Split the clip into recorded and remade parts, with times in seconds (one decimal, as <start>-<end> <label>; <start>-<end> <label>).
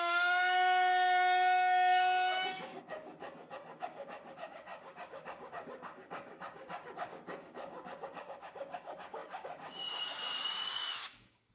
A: 0.0-11.5 remade